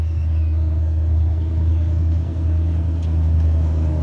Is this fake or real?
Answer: fake